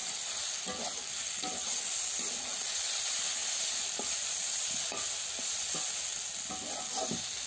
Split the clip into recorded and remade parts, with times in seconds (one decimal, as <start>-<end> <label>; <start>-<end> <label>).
0.0-7.5 recorded